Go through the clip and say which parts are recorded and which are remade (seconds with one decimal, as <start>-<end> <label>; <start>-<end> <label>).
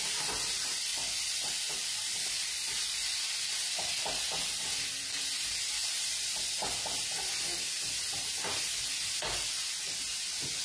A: 0.0-0.9 recorded; 0.9-3.6 remade; 3.6-10.6 recorded